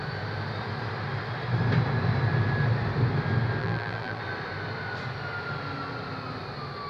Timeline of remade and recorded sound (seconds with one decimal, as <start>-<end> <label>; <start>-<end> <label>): 0.0-3.6 recorded; 3.6-4.2 remade; 4.2-6.9 recorded